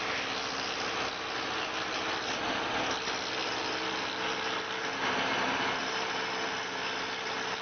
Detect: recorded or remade recorded